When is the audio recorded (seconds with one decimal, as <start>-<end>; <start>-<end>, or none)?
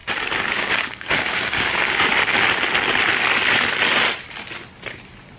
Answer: 0.0-0.5; 2.1-5.4